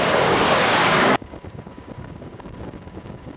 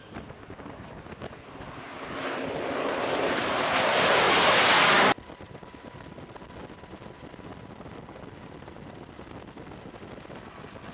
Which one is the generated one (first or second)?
first